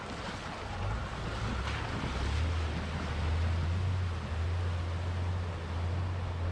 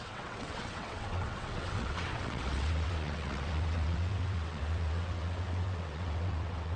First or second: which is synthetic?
second